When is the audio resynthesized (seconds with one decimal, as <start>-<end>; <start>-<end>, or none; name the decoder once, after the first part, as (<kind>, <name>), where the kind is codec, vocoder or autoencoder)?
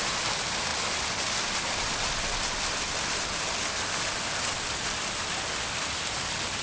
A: none